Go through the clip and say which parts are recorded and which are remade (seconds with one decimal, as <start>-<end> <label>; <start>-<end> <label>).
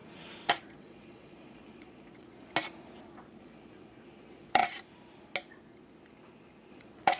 0.0-0.5 recorded; 0.5-2.4 remade; 2.4-3.0 recorded; 3.0-4.6 remade; 4.6-6.7 recorded; 6.7-7.2 remade